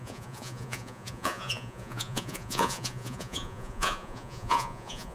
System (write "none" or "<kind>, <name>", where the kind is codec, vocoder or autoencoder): vocoder, Vocos